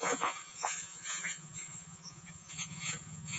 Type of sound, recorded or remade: remade